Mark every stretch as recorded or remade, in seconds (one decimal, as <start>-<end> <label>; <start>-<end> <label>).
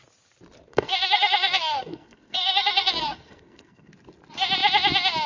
0.0-0.7 recorded; 0.7-3.9 remade; 3.9-5.3 recorded